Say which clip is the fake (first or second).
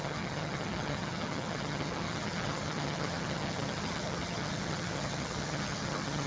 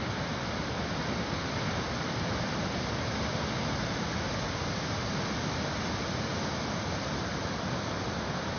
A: first